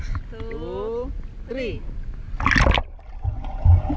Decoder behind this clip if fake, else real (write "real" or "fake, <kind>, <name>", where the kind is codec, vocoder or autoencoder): real